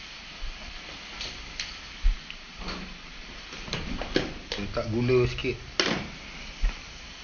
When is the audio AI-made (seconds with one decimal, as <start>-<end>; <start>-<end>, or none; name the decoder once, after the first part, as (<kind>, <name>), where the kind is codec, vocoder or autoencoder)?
none